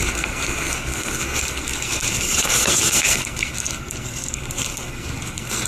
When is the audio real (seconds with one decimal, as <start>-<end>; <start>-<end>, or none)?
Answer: none

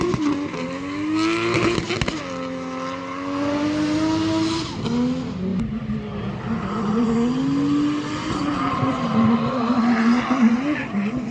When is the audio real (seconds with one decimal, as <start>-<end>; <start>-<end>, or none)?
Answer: 0.0-11.3

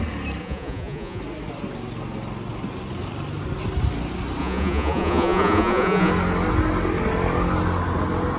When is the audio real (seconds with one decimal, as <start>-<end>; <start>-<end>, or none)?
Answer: 0.0-0.4; 1.2-4.4; 6.1-8.4

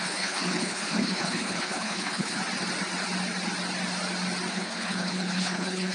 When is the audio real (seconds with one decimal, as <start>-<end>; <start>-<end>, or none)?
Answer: 2.4-4.5

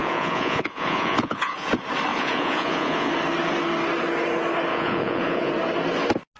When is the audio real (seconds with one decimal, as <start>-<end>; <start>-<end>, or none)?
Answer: 1.7-2.1; 3.1-4.7; 5.5-6.4

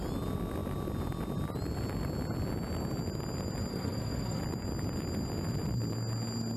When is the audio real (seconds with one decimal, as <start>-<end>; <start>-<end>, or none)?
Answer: 0.0-3.7; 4.4-6.6

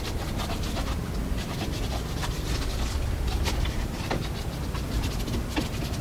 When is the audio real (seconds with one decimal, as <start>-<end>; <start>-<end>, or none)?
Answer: 0.0-6.0

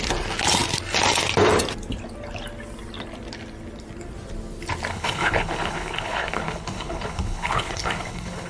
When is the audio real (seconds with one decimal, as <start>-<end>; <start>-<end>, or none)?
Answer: 0.0-4.9